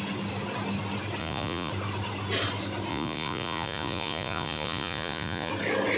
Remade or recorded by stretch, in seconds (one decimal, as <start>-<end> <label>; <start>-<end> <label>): 0.0-1.2 recorded; 1.2-1.7 remade; 1.7-2.9 recorded; 2.9-5.5 remade; 5.5-6.0 recorded